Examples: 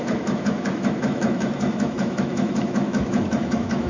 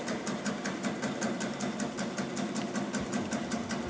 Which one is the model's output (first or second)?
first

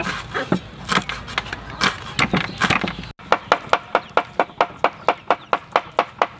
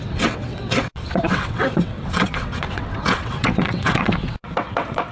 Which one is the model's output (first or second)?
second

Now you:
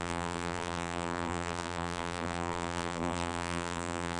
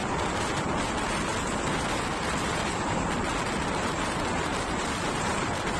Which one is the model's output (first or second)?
first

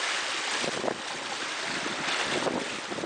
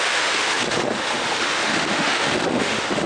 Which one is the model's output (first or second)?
second